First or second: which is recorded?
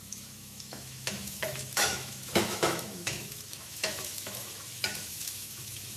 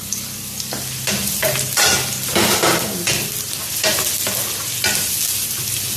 second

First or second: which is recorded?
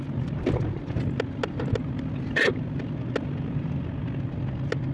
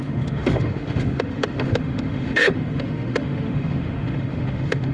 first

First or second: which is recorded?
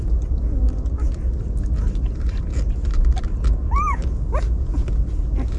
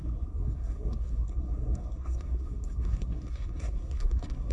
first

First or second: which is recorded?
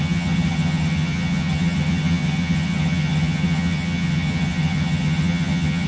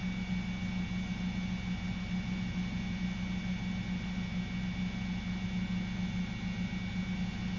second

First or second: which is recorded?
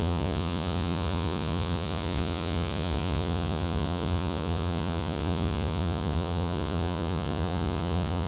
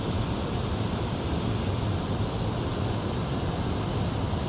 second